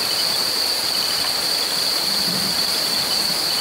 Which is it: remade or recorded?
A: remade